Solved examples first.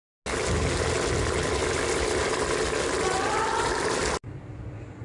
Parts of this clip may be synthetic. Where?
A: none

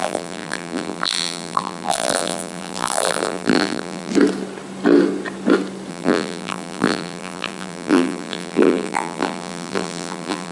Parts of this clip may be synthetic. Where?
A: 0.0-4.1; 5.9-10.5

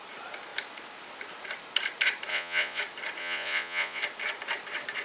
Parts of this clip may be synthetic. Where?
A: 2.3-2.8; 3.2-4.0

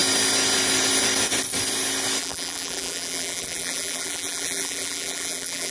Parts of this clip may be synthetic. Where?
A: 2.2-5.7

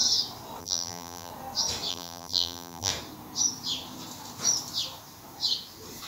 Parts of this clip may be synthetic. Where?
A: 0.6-1.3; 1.9-2.9

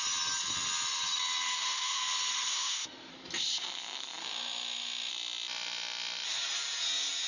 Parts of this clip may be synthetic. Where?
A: 1.5-2.0; 2.5-3.1; 4.2-5.1

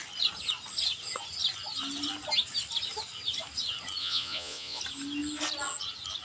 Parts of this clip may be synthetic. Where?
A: 4.0-4.8